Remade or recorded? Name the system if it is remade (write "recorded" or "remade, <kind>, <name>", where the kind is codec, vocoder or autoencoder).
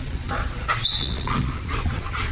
remade, vocoder, Vocos